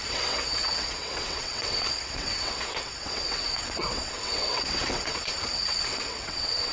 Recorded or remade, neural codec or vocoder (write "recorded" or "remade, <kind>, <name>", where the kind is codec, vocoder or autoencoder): remade, vocoder, WaveNeXt